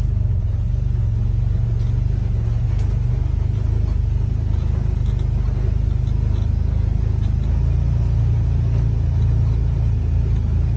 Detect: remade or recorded recorded